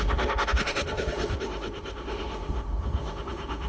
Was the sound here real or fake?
fake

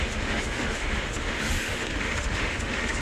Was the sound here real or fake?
fake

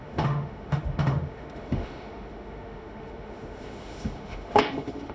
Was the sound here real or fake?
fake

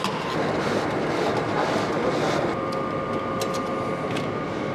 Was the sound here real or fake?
real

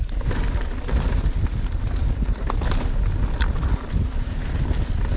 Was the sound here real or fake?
real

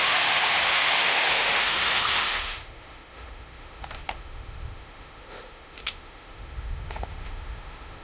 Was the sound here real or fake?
fake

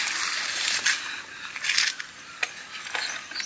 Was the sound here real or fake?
real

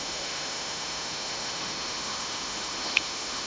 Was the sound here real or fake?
fake